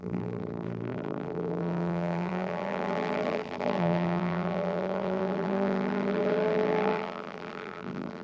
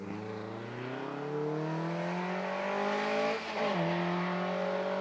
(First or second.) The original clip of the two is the second